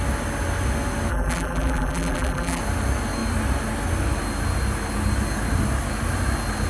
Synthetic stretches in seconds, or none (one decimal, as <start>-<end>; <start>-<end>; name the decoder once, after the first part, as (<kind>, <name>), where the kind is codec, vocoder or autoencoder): 1.1-2.6 (vocoder, BigVGAN v2)